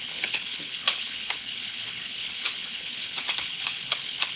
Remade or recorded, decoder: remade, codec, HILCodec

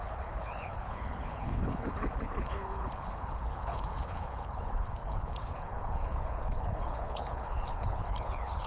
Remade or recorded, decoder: remade, codec, HILCodec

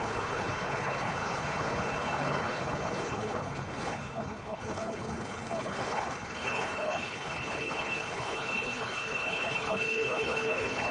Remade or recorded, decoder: remade, codec, HILCodec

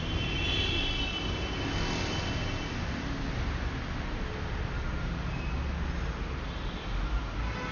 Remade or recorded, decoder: recorded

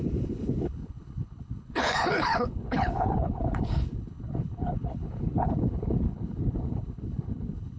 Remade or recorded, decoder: remade, codec, HILCodec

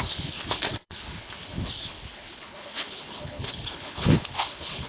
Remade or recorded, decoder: remade, codec, HILCodec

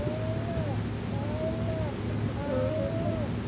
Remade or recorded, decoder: recorded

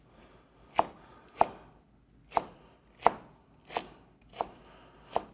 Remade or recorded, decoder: recorded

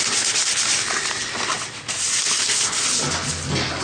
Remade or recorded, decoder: recorded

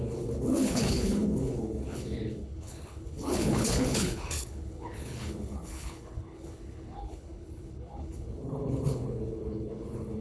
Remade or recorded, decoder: remade, codec, HILCodec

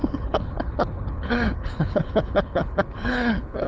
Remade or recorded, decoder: remade, codec, HILCodec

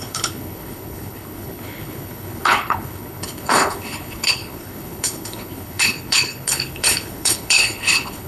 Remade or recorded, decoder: remade, codec, HILCodec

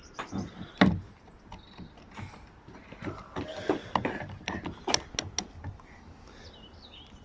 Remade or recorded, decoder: recorded